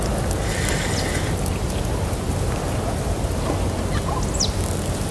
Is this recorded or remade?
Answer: recorded